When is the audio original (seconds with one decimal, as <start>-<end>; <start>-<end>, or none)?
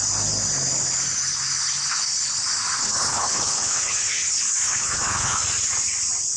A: 0.0-2.8; 5.4-6.4